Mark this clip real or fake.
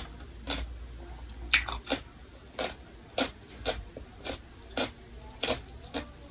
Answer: real